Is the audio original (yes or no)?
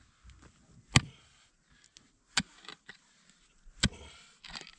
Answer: yes